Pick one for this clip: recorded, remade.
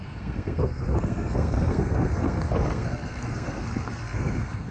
remade